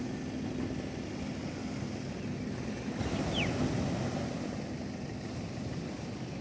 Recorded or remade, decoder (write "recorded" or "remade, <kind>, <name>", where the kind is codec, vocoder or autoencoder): recorded